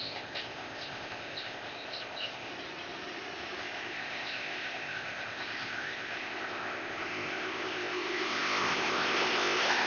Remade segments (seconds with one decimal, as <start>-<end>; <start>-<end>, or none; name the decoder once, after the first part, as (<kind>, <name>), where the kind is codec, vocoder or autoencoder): 0.0-2.5 (codec, ZipCodec); 3.6-9.9